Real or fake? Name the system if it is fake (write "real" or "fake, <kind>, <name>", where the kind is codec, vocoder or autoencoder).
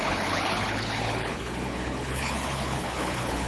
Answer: fake, codec, HILCodec